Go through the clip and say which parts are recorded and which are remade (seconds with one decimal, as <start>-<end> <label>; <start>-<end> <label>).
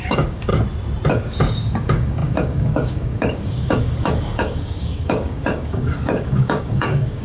0.0-0.5 remade; 0.5-1.1 recorded; 1.1-7.2 remade